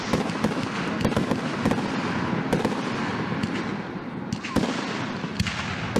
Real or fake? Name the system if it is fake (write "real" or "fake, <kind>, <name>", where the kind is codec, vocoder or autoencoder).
real